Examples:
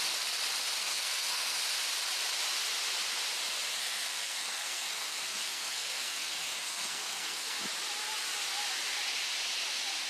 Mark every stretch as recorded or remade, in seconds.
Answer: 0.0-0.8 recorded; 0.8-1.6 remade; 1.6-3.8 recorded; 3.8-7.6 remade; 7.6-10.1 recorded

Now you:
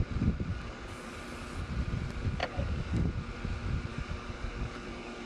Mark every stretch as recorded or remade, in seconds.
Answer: 0.0-0.5 recorded; 0.5-1.1 remade; 1.1-2.4 recorded; 2.4-3.1 remade; 3.1-3.9 recorded; 3.9-5.3 remade

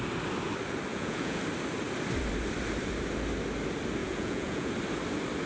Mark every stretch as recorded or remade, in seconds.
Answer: 0.0-0.9 recorded; 0.9-1.4 remade; 1.4-4.0 recorded; 4.0-4.7 remade; 4.7-5.5 recorded

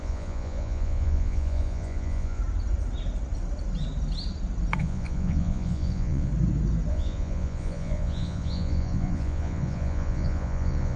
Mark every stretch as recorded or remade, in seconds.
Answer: 0.0-2.4 remade; 2.4-4.8 recorded; 4.8-6.3 remade; 6.3-6.9 recorded; 6.9-11.0 remade

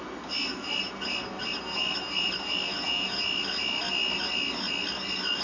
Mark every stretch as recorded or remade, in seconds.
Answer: 0.0-2.7 recorded; 2.7-3.2 remade; 3.2-5.4 recorded